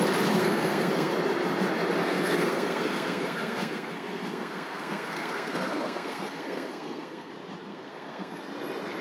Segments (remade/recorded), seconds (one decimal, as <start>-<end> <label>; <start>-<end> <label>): 0.0-0.4 recorded; 0.4-1.1 remade; 1.1-2.0 recorded; 2.0-7.3 remade; 7.3-7.7 recorded; 7.7-8.4 remade; 8.4-9.0 recorded